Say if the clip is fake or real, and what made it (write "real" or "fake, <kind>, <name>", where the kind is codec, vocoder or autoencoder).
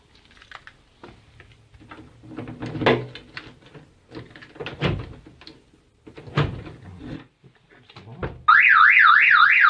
real